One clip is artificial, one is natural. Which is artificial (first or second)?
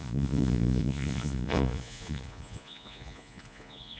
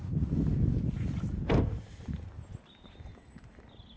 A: first